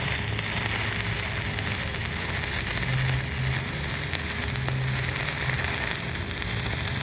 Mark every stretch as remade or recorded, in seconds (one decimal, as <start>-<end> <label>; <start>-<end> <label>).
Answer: 0.0-7.0 recorded